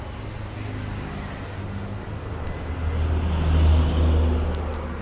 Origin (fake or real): real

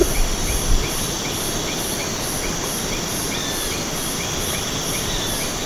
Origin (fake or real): real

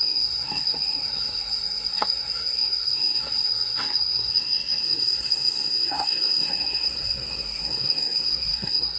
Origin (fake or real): fake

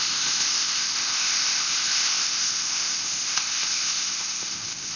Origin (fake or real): fake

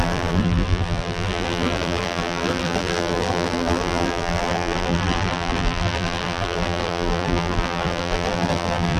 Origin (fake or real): fake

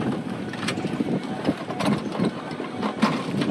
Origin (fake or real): real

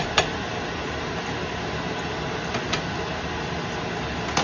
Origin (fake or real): real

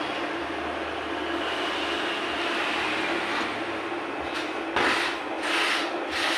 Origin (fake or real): real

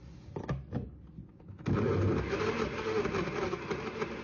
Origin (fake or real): real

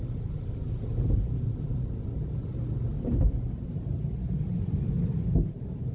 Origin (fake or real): real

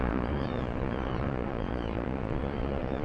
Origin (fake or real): fake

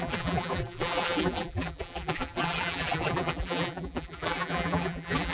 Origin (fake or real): fake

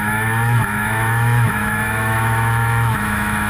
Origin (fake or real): fake